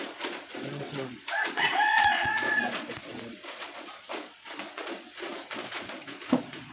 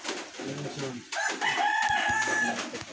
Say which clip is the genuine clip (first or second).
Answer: second